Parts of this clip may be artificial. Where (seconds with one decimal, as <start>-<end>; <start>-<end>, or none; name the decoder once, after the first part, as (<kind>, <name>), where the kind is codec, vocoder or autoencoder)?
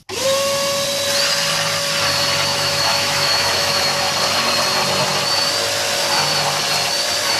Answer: 2.5-4.0 (autoencoder, DAC-VAE)